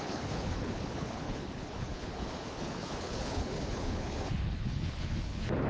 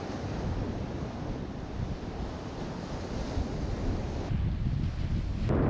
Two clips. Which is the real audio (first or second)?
second